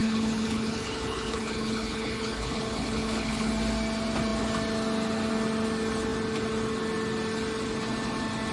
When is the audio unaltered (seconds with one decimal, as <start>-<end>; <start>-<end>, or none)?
3.5-8.5